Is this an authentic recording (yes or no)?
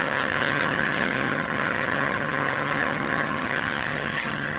no